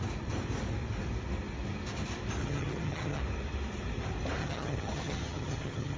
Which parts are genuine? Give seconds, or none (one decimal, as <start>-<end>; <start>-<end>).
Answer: 0.0-2.4; 3.2-4.4